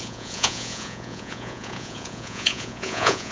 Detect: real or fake fake